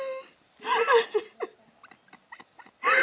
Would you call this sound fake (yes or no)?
no